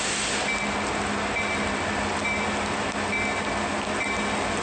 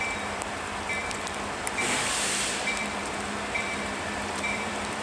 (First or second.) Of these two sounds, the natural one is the first